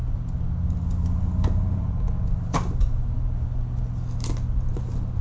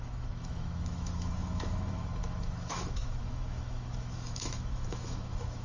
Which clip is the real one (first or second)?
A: first